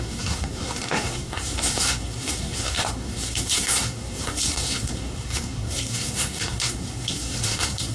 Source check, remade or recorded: remade